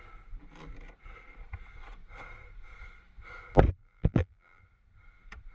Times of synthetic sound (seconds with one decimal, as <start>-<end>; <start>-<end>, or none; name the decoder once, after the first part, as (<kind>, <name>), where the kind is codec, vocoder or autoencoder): 3.8-4.6 (vocoder, BigVGAN v2)

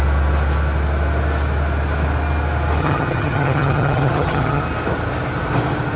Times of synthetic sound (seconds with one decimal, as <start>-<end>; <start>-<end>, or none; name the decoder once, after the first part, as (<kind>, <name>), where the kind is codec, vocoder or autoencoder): 2.8-4.6 (vocoder, HiFi-GAN)